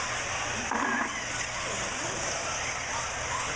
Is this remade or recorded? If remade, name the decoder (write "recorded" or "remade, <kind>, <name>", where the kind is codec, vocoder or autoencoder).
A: recorded